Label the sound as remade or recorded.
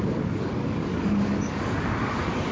remade